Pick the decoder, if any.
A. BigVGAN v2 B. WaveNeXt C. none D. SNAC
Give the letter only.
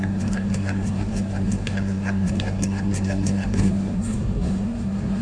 D